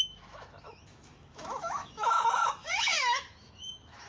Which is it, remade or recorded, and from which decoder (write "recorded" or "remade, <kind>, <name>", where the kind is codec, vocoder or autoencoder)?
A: remade, autoencoder, DAC-VAE